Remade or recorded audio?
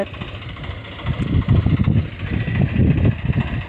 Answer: recorded